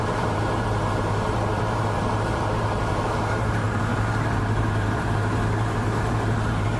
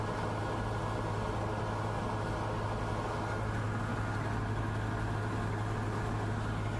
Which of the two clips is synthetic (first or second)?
first